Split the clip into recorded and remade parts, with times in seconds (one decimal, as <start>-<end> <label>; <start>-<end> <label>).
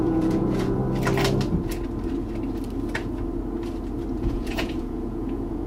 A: 0.0-0.8 remade; 0.8-4.2 recorded; 4.2-5.7 remade